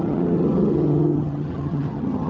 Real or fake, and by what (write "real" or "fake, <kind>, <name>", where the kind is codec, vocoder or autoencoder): fake, vocoder, HiFi-GAN